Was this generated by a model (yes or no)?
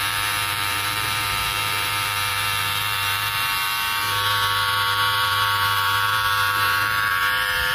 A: yes